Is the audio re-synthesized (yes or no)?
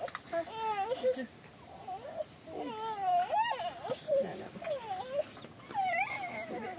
no